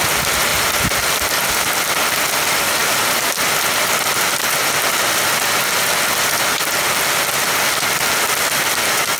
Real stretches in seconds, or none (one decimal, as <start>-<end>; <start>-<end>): 0.0-9.2